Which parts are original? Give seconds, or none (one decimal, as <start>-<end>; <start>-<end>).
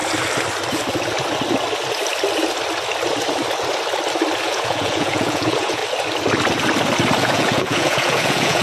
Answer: 0.0-4.4; 5.8-7.2